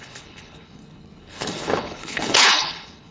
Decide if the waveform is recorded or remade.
remade